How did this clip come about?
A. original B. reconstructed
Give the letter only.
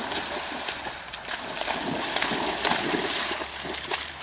A